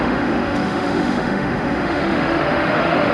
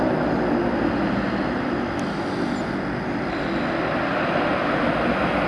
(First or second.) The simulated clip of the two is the first